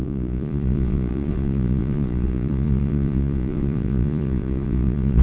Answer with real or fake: fake